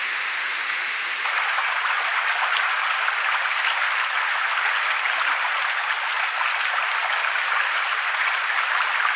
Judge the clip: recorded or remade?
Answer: recorded